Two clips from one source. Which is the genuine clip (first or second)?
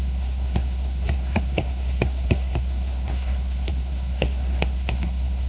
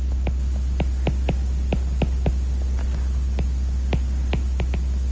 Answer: second